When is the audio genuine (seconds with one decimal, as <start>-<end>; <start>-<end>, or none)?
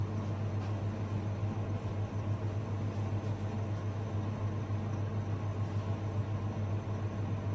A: 0.0-1.4; 2.6-7.5